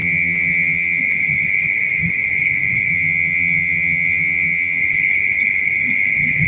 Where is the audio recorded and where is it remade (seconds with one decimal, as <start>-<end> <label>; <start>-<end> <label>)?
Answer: 0.0-1.0 remade; 1.0-2.9 recorded; 2.9-4.8 remade; 4.8-6.5 recorded